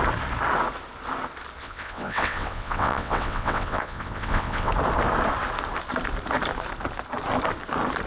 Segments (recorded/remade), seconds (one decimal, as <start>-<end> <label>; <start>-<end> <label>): 0.0-1.6 recorded; 1.6-4.7 remade; 4.7-8.1 recorded